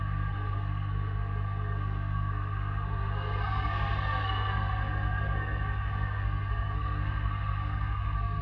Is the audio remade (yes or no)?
yes